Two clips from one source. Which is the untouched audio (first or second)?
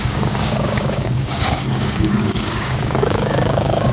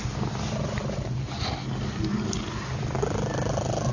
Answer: second